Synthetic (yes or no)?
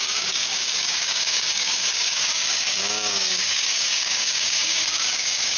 yes